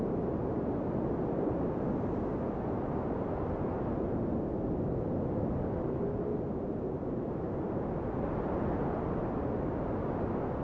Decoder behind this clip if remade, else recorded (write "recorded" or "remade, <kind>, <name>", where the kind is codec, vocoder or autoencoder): recorded